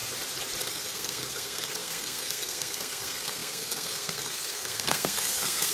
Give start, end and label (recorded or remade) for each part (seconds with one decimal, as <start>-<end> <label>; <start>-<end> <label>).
0.0-0.7 recorded; 0.7-5.7 remade